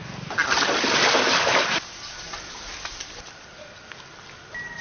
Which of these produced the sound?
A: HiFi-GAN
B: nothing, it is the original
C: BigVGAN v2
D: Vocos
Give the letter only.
B